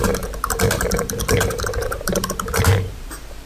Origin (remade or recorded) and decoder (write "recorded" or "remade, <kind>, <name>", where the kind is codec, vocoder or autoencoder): remade, vocoder, BigVGAN v2